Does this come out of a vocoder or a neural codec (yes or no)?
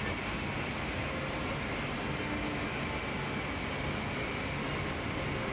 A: no